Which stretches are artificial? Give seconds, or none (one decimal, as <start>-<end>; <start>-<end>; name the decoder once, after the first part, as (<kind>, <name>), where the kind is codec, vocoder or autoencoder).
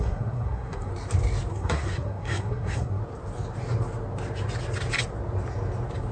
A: 0.0-0.9 (codec, SNAC); 1.5-3.0